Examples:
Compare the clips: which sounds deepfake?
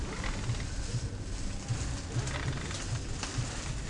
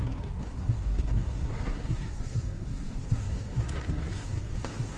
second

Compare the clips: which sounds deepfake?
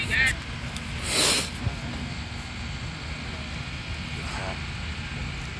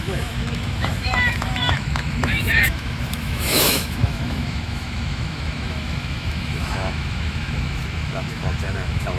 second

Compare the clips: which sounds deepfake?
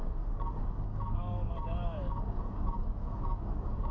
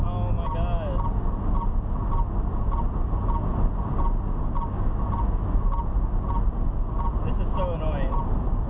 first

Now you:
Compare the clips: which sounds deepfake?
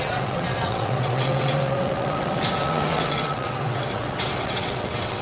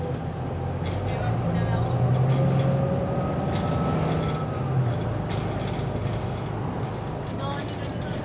first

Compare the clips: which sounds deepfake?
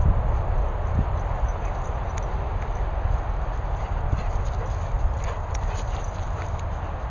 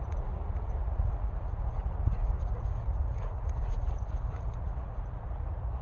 second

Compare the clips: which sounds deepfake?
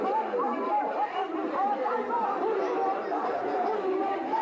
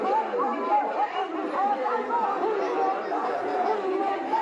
first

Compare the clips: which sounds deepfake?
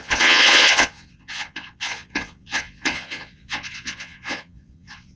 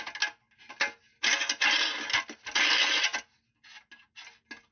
first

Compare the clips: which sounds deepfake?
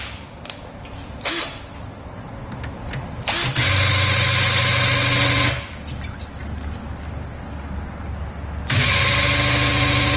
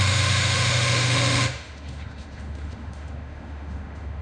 second